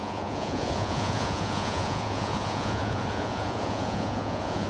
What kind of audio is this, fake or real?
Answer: fake